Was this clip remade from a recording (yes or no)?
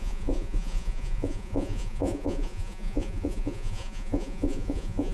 yes